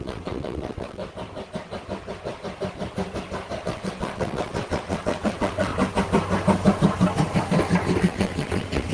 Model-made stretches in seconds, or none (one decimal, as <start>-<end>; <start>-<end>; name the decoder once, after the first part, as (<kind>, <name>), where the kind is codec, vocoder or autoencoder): 0.0-1.0 (vocoder, WaveNeXt); 3.6-5.7; 8.0-8.9